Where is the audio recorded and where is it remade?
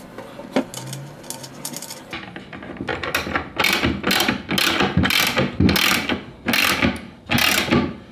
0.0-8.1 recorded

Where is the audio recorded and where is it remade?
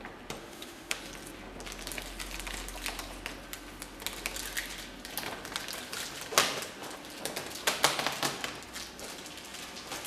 0.0-0.4 recorded; 0.4-1.0 remade; 1.0-10.1 recorded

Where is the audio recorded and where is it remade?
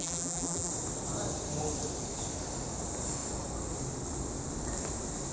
0.0-0.7 remade; 0.7-5.3 recorded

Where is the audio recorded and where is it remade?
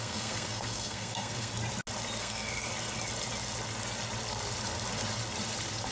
0.0-1.5 remade; 1.5-2.2 recorded; 2.2-2.7 remade; 2.7-5.9 recorded